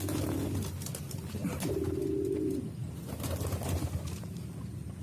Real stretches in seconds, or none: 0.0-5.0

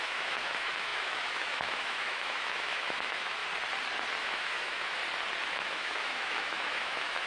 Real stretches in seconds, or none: 3.4-4.2; 5.0-5.5

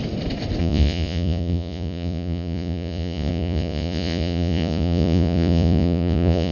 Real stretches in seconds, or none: 0.0-0.6

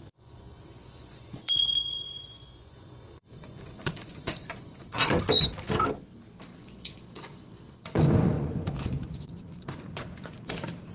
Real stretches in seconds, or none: 5.2-6.5; 10.5-10.9